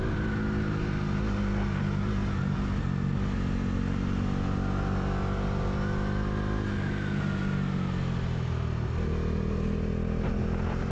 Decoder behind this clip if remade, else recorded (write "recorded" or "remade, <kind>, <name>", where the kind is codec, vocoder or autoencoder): recorded